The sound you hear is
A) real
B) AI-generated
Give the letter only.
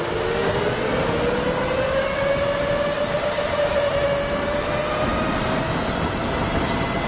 A